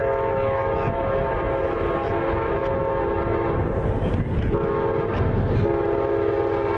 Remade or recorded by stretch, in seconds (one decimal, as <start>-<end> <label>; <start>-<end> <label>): 0.0-6.8 recorded

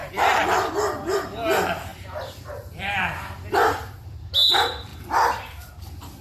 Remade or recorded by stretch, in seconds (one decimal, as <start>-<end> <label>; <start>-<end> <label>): 0.0-1.9 recorded; 1.9-3.8 remade; 3.8-4.9 recorded; 4.9-6.2 remade

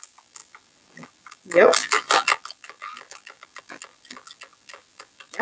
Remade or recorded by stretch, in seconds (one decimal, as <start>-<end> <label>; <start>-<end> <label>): 0.0-5.4 remade

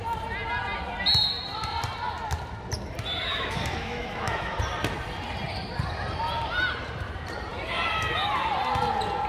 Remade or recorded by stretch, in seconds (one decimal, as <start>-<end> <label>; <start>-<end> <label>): 0.0-3.3 recorded; 3.3-4.6 remade; 4.6-9.3 recorded

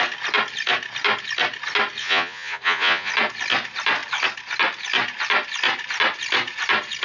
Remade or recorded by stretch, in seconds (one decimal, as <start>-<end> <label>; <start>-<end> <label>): 0.0-2.0 recorded; 2.0-3.1 remade; 3.1-7.0 recorded

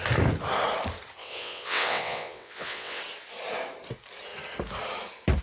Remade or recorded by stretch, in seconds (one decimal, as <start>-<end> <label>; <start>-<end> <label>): 0.0-1.2 recorded; 1.2-3.0 remade; 3.0-5.4 recorded